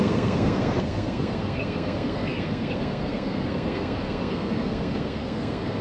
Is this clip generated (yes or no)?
yes